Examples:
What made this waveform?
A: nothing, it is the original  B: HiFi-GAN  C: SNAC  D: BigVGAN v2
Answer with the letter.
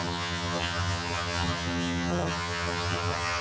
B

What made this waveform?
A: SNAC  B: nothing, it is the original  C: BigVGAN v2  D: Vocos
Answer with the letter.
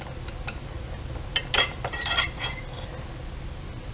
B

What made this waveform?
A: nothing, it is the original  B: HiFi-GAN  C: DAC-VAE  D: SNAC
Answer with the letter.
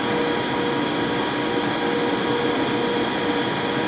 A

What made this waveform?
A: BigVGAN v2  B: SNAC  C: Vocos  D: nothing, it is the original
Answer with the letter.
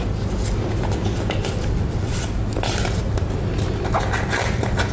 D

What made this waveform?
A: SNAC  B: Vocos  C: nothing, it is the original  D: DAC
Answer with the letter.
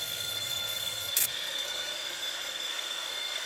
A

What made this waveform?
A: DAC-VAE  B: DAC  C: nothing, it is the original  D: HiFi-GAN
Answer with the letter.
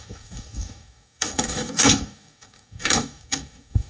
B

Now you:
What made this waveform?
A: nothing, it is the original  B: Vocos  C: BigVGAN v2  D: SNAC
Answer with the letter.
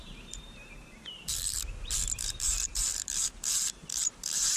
C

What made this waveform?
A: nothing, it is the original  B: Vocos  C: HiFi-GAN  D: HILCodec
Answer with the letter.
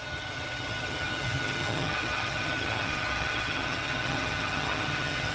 C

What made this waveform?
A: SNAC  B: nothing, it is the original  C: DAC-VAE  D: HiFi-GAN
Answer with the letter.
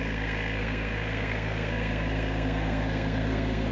A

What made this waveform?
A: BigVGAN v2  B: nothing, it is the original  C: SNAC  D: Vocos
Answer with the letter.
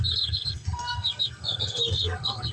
C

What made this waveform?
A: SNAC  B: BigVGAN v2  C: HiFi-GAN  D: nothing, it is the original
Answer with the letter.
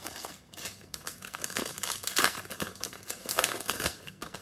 A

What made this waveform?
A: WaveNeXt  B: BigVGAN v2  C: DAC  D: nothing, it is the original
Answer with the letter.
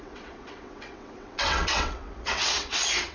A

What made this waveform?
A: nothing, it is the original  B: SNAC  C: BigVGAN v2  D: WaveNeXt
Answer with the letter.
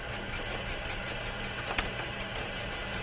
C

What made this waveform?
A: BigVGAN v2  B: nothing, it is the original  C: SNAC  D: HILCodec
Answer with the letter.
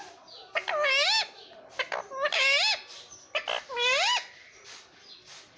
B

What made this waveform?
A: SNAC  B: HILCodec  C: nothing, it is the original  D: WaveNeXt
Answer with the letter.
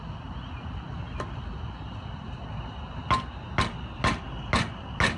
C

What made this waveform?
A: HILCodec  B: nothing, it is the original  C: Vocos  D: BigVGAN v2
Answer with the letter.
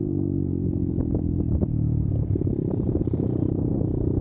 D